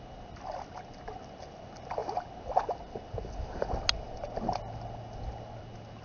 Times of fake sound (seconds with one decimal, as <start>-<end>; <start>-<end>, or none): none